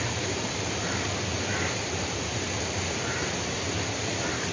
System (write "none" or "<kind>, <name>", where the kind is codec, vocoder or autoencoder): vocoder, BigVGAN v2